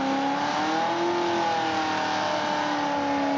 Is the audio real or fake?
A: real